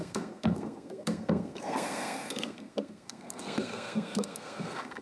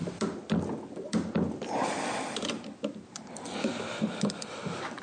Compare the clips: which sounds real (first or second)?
second